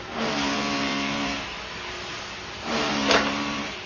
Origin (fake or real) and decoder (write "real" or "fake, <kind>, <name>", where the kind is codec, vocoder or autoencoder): fake, vocoder, BigVGAN v2